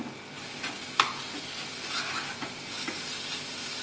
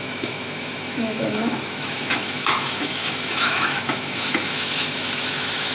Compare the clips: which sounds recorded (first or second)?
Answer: first